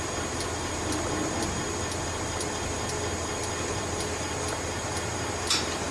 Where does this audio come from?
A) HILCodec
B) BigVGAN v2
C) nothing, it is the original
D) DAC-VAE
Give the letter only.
C